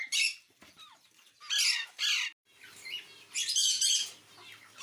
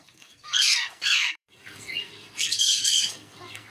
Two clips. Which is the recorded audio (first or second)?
first